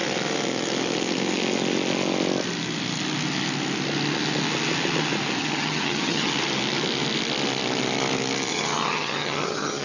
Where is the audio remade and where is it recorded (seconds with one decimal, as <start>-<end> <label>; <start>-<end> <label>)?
0.0-5.4 recorded; 5.4-6.3 remade; 6.3-8.5 recorded; 8.5-9.8 remade